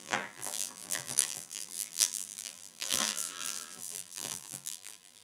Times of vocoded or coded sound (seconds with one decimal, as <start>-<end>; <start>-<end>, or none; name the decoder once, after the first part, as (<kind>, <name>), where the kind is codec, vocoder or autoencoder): 0.0-5.2 (vocoder, BigVGAN v2)